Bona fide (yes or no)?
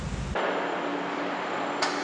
yes